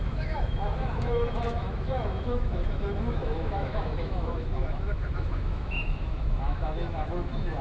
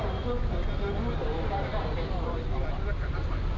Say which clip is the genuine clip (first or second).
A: second